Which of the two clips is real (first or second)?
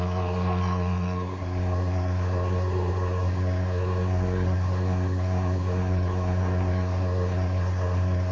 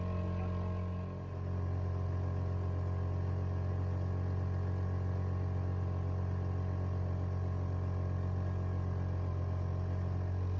second